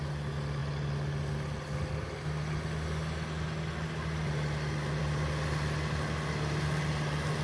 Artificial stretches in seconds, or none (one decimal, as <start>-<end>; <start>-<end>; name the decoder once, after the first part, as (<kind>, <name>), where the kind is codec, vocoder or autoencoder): none